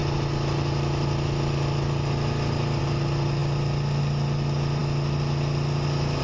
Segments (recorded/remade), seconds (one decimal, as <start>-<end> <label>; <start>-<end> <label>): 0.0-6.2 recorded